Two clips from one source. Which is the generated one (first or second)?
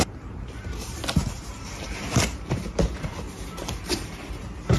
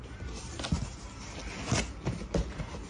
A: first